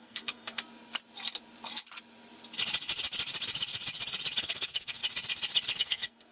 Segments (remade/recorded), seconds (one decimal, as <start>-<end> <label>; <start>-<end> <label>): 0.0-0.6 remade; 0.6-4.4 recorded; 4.4-5.0 remade; 5.0-5.8 recorded; 5.8-6.3 remade